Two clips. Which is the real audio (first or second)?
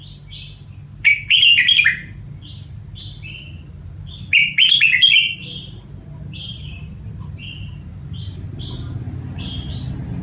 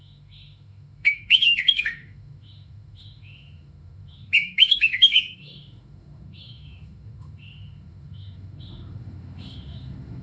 first